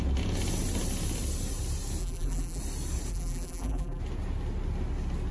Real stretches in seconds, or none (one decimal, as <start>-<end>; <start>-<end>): 0.0-2.0; 2.6-3.1; 4.0-5.3